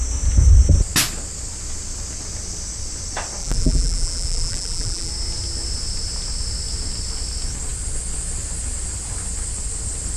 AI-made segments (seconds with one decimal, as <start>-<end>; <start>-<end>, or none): 3.4-5.1